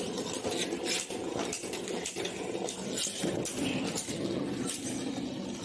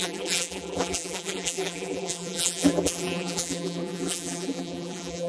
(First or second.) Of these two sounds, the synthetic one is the second